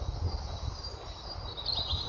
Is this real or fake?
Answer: real